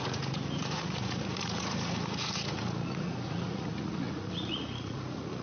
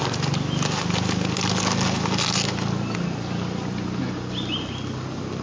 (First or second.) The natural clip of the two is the second